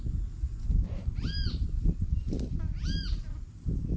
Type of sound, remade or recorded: recorded